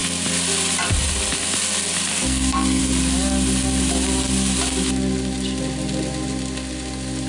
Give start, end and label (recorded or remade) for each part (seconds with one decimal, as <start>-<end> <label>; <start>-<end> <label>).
0.0-2.1 recorded; 2.1-2.8 remade; 2.8-7.3 recorded